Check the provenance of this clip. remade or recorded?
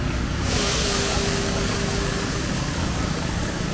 remade